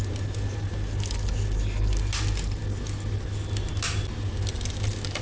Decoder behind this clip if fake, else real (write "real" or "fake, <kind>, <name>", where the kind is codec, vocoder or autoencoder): real